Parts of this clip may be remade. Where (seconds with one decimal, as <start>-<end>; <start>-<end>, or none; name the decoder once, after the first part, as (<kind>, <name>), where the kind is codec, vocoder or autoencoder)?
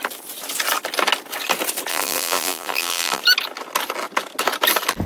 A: 1.9-3.2 (vocoder, BigVGAN v2)